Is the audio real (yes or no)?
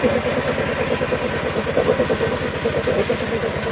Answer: yes